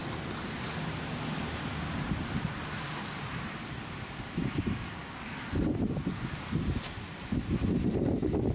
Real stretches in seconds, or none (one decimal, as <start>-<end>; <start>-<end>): 0.0-8.5